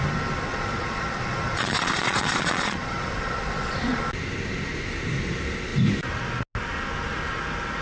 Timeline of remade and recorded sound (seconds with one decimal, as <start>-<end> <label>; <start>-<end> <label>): 0.0-0.5 recorded; 0.5-4.0 remade; 4.0-7.8 recorded

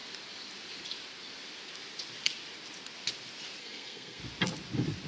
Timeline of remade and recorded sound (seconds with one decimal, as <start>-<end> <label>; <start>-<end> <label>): 0.0-3.6 recorded; 3.6-4.2 remade; 4.2-5.1 recorded

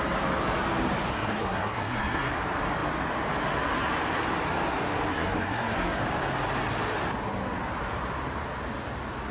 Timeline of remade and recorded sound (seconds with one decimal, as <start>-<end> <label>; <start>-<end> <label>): 0.0-1.1 recorded; 1.1-2.3 remade; 2.3-5.1 recorded; 5.1-6.0 remade; 6.0-9.3 recorded

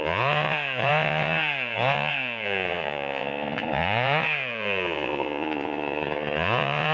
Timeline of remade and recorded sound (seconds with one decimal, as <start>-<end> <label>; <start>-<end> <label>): 0.0-6.9 remade

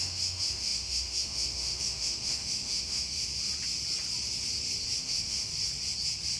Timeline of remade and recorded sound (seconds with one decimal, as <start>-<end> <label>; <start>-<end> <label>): 0.0-3.3 remade; 3.3-5.0 recorded; 5.0-5.5 remade; 5.5-6.4 recorded

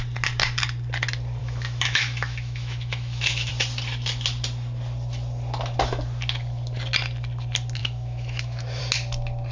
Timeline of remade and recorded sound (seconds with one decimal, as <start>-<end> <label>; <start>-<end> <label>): 0.0-1.4 recorded; 1.4-3.5 remade; 3.5-7.8 recorded; 7.8-8.8 remade; 8.8-9.5 recorded

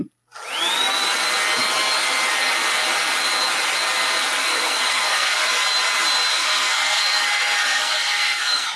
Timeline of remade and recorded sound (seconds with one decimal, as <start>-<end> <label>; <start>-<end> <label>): 0.0-4.4 recorded; 4.4-5.5 remade; 5.5-6.3 recorded; 6.3-8.8 remade

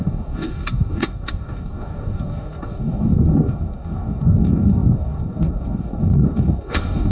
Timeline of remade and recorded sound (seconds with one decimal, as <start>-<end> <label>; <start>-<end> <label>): 0.0-7.1 remade